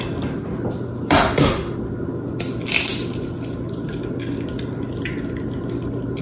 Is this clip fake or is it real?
real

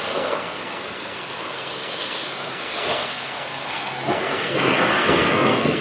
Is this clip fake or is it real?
fake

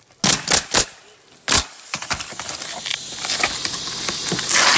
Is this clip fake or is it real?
real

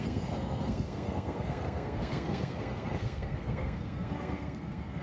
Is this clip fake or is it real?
fake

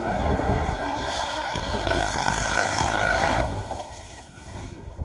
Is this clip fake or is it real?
fake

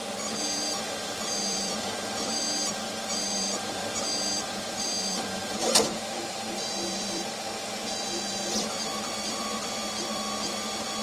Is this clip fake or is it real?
fake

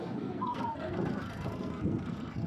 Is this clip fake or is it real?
fake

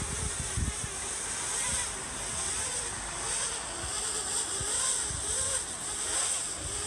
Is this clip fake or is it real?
real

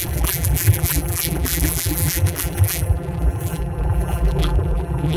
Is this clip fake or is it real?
fake